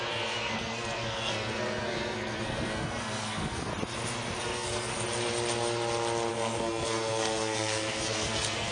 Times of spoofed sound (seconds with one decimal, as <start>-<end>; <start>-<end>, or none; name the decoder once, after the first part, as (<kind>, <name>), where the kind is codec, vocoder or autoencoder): 0.0-3.7 (codec, SNAC); 4.4-4.9; 6.3-8.7